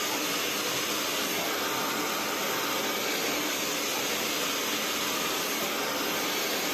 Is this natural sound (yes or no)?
yes